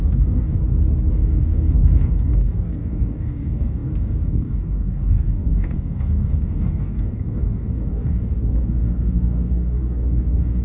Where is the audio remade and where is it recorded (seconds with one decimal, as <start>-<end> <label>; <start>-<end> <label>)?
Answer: 0.0-0.6 remade; 0.6-1.1 recorded; 1.1-10.6 remade